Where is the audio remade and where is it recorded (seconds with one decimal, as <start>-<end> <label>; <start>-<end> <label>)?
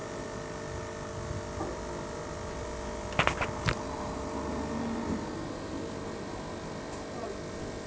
0.0-7.9 recorded